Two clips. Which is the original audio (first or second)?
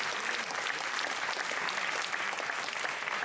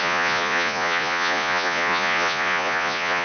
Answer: first